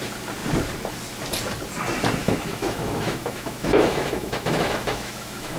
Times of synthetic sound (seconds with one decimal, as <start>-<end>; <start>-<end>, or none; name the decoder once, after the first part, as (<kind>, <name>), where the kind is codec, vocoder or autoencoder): 2.2-5.6 (autoencoder, DAC-VAE)

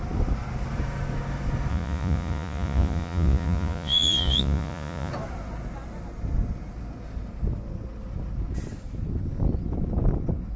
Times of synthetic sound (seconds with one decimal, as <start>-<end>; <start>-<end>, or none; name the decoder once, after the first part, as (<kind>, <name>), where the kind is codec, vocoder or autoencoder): 1.7-5.1 (vocoder, Vocos)

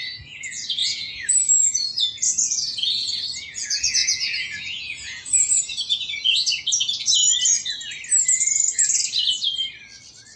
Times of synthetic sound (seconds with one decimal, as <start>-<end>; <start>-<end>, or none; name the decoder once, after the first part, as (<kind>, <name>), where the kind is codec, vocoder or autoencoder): 0.0-7.2 (vocoder, Vocos)

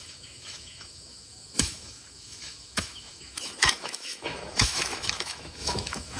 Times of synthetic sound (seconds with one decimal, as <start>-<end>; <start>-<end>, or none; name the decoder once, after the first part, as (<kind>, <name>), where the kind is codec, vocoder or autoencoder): 0.0-6.2 (autoencoder, DAC-VAE)